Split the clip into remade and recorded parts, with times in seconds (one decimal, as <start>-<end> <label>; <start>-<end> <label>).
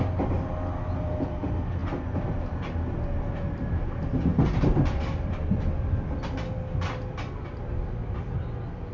0.0-4.3 recorded; 4.3-5.0 remade; 5.0-8.9 recorded